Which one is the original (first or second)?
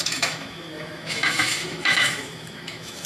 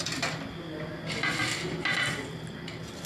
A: second